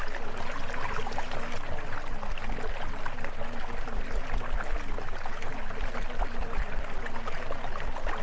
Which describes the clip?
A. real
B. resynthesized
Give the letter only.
A